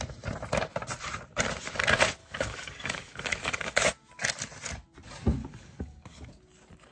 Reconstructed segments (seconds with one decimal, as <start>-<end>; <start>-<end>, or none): 2.2-3.9; 5.4-6.3